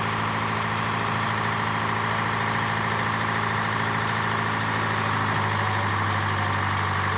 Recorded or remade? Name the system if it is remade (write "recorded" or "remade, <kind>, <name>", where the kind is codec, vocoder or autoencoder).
recorded